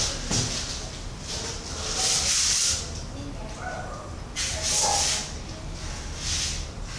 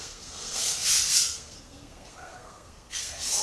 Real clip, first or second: first